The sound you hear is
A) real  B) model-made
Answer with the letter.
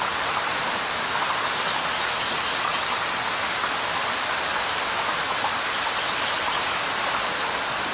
A